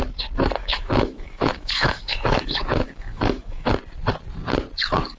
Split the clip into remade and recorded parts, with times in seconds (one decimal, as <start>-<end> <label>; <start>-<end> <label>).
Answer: 0.0-0.6 recorded; 0.6-3.7 remade; 3.7-5.2 recorded